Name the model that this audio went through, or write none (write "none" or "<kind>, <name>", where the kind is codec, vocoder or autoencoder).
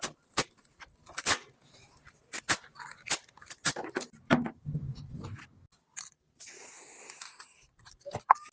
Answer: none